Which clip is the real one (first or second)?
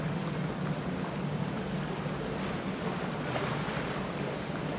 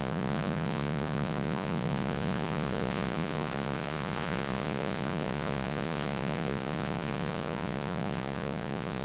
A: first